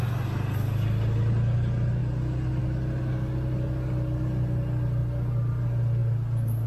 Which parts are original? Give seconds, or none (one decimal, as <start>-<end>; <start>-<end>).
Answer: 0.0-6.7